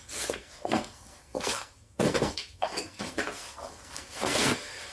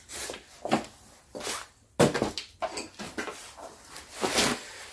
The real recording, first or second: second